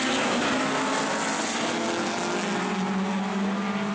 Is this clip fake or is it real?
real